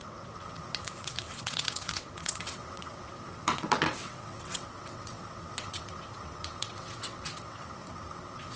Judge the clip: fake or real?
fake